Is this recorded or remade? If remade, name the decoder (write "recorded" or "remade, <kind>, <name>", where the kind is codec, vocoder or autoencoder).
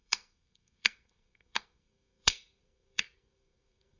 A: remade, codec, SNAC